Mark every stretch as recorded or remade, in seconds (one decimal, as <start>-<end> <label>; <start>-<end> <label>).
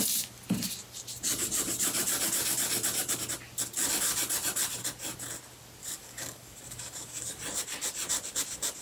0.0-5.8 recorded; 5.8-7.4 remade; 7.4-8.8 recorded